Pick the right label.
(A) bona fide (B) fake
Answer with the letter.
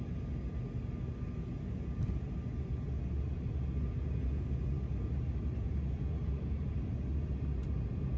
A